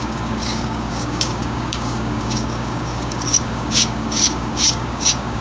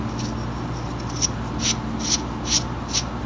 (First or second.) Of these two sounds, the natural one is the second